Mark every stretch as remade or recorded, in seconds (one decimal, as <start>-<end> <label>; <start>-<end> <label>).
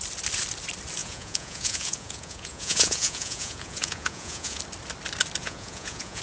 0.0-1.0 recorded; 1.0-4.6 remade; 4.6-5.4 recorded; 5.4-6.2 remade